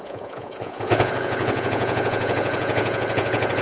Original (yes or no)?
no